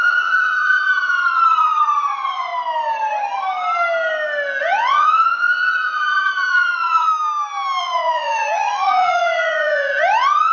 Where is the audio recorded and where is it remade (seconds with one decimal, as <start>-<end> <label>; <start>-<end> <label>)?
0.0-2.5 remade; 2.5-4.6 recorded; 4.6-7.1 remade; 7.1-7.8 recorded; 7.8-10.5 remade